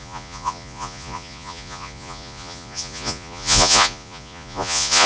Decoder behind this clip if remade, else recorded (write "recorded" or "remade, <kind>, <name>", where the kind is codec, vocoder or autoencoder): remade, vocoder, Vocos